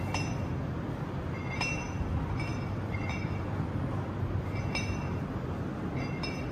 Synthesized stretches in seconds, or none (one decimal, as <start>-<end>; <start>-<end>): 2.5-3.8